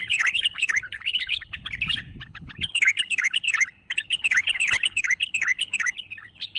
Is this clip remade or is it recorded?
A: remade